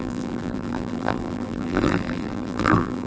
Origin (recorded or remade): remade